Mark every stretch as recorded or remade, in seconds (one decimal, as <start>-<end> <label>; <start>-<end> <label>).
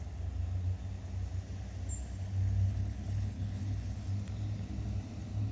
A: 0.0-2.7 recorded; 2.7-4.1 remade; 4.1-5.5 recorded